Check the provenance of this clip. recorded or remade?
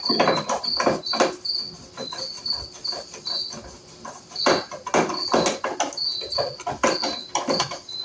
recorded